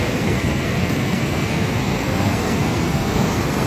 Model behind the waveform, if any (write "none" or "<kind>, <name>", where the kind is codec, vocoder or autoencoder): codec, SNAC